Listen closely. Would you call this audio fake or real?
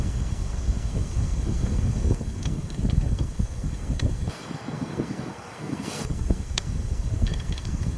fake